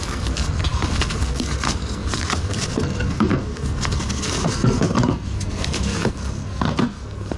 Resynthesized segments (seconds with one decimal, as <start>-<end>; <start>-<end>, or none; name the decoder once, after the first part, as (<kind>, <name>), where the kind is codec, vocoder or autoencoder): 0.0-7.4 (codec, SNAC)